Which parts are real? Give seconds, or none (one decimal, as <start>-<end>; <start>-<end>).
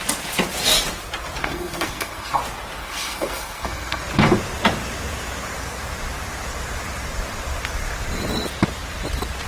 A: 0.0-1.4; 2.4-2.8; 4.0-9.5